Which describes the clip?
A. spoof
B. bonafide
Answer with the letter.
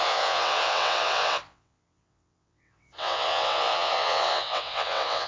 A